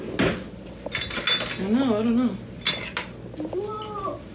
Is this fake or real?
real